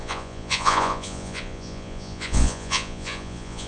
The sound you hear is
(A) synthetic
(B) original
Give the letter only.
A